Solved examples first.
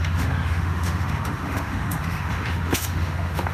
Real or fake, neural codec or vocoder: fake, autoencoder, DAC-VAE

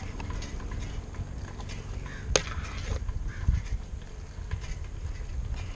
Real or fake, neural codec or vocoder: real